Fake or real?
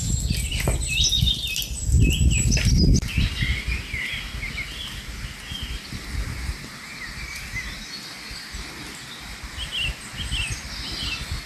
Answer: real